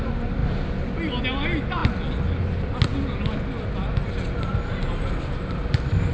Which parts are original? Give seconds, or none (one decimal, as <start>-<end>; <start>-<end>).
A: 0.0-6.1